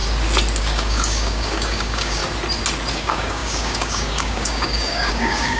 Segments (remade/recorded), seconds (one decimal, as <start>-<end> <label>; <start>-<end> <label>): 0.0-0.6 recorded; 0.6-2.2 remade; 2.2-2.9 recorded; 2.9-5.6 remade